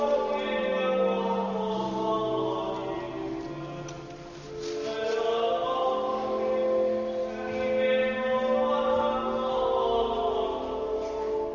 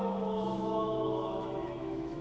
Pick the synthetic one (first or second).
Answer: second